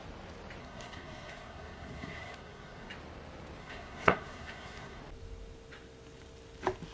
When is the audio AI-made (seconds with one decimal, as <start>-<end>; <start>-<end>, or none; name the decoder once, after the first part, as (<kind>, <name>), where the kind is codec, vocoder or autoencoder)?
0.6-2.9 (codec, SNAC); 3.6-5.0